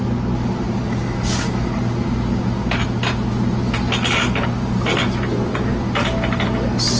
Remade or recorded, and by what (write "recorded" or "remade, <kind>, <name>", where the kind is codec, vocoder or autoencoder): recorded